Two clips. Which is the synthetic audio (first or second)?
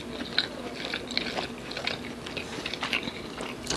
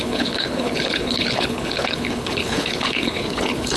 second